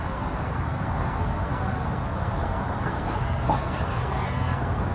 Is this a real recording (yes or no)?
no